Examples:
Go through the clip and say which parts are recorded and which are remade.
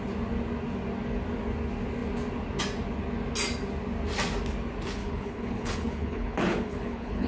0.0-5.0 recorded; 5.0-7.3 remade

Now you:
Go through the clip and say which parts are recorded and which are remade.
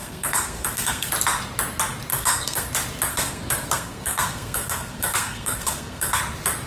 0.0-1.1 remade; 1.1-2.1 recorded; 2.1-2.7 remade; 2.7-3.1 recorded; 3.1-6.2 remade; 6.2-6.7 recorded